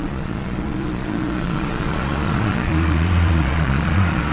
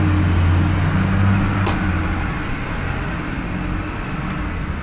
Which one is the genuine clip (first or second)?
second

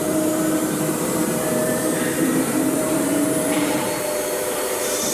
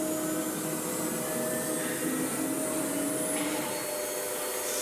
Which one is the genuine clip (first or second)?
second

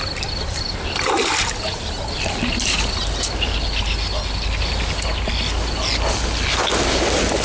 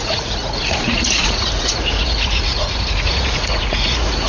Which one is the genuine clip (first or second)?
first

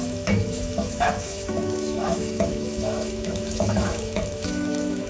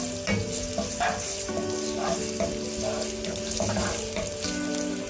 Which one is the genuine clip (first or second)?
second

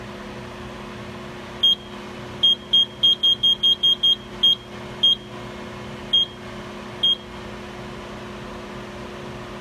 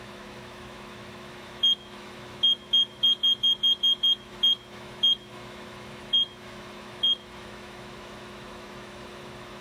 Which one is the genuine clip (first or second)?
first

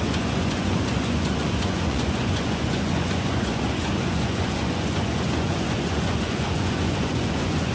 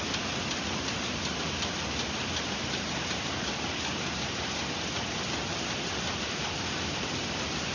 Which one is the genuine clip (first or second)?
second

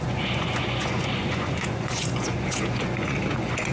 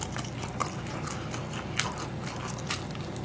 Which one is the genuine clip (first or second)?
second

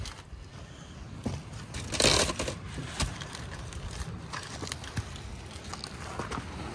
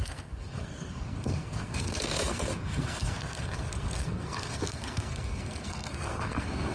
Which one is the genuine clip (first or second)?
first